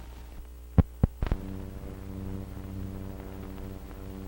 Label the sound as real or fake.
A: real